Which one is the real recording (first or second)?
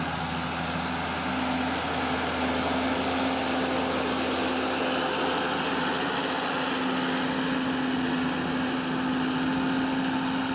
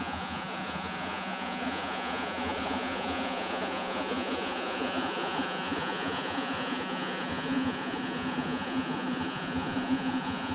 first